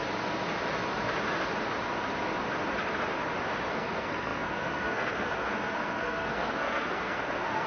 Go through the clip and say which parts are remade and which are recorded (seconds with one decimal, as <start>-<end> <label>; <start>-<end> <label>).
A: 0.0-3.7 recorded; 3.7-7.7 remade